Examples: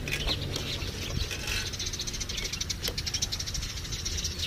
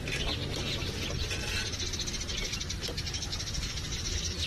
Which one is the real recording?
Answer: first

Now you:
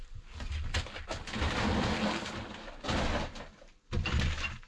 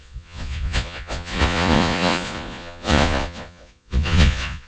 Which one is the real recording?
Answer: first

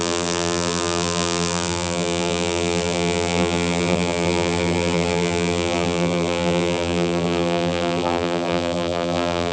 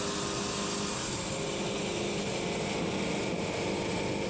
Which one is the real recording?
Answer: second